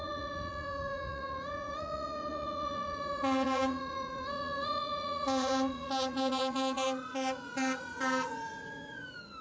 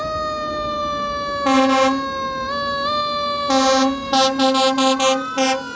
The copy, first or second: first